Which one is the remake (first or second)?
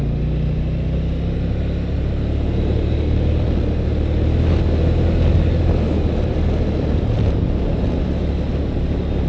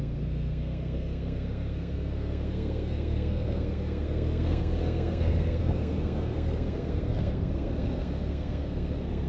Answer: second